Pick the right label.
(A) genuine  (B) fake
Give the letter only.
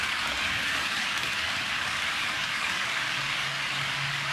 B